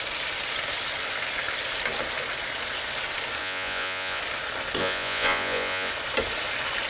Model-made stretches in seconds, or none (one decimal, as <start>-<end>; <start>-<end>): 3.4-4.2; 4.8-5.9